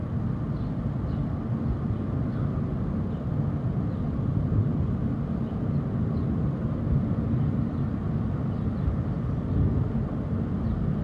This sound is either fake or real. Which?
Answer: real